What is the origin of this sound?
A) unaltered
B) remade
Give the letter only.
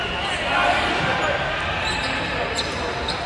A